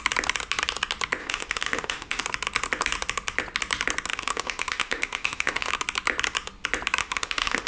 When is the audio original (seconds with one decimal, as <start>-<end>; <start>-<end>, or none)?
0.0-1.2; 2.2-4.1; 5.7-7.0